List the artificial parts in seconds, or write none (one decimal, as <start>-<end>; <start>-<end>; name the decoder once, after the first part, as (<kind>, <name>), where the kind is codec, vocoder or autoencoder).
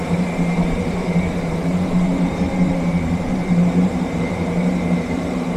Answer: 0.0-5.6 (vocoder, BigVGAN v2)